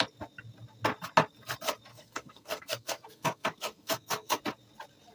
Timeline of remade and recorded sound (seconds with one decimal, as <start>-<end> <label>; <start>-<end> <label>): 0.0-1.9 recorded; 1.9-4.4 remade; 4.4-5.1 recorded